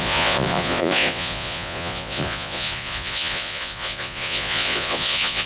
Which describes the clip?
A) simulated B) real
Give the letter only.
A